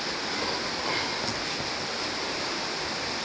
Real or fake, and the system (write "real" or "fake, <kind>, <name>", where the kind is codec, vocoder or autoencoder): real